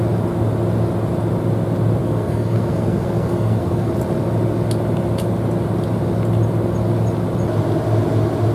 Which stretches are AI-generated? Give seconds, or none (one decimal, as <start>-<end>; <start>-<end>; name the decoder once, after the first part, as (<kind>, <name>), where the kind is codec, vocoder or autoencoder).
2.0-3.9 (codec, SNAC)